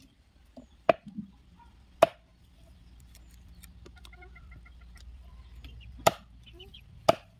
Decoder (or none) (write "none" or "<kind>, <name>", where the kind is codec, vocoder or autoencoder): vocoder, BigVGAN v2